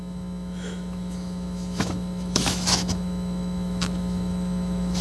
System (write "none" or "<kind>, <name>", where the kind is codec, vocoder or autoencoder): autoencoder, DAC-VAE